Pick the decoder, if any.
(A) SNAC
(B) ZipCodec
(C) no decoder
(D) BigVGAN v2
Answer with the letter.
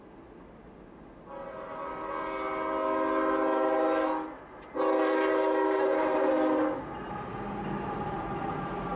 C